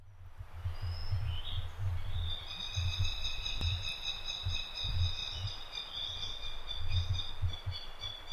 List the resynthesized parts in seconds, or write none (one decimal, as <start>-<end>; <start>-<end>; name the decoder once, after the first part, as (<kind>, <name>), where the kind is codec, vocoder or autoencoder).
5.2-5.8 (vocoder, BigVGAN v2)